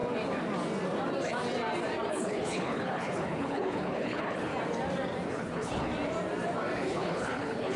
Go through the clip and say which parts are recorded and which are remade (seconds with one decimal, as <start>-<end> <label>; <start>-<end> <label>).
0.0-2.1 recorded; 2.1-4.5 remade; 4.5-5.3 recorded; 5.3-5.9 remade; 5.9-6.9 recorded; 6.9-7.8 remade